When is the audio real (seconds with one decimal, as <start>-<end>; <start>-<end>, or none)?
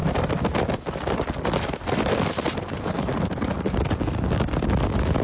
3.1-5.2